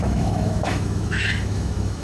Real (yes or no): no